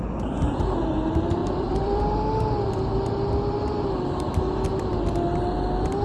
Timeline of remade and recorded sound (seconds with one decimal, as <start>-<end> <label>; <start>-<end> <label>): 0.0-1.4 recorded; 1.4-2.0 remade; 2.0-6.0 recorded